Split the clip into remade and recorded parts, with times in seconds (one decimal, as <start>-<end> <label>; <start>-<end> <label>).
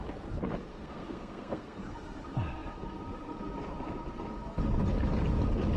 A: 0.0-0.7 recorded; 0.7-1.8 remade; 1.8-5.8 recorded